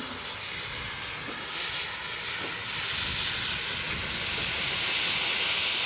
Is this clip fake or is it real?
real